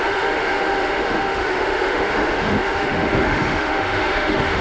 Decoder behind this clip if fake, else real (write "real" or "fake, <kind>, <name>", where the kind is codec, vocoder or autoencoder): fake, autoencoder, DAC-VAE